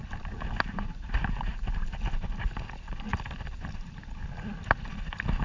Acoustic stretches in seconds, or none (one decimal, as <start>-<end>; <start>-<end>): 0.0-3.1; 4.0-5.4